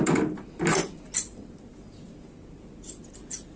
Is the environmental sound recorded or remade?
recorded